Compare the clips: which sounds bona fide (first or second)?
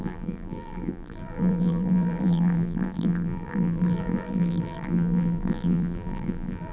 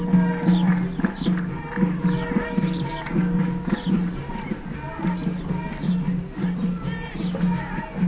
second